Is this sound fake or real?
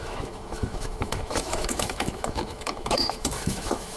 fake